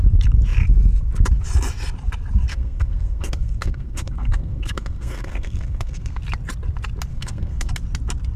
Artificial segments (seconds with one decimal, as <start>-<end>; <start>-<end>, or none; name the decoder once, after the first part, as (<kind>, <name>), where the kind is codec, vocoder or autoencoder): 2.5-6.2 (codec, SNAC); 7.1-7.7